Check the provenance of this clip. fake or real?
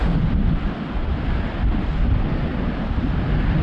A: real